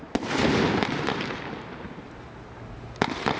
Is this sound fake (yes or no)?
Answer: no